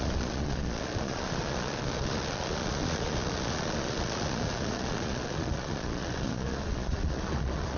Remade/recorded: remade